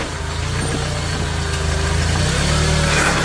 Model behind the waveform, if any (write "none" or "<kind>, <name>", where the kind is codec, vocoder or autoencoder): none